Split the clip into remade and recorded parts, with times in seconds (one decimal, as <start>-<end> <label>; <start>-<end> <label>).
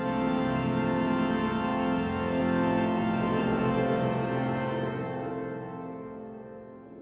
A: 0.0-3.4 recorded; 3.4-5.3 remade; 5.3-7.0 recorded